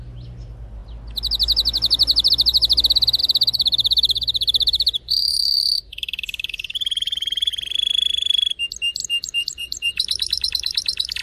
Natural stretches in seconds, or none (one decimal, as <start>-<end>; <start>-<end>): 0.0-3.2; 7.5-9.0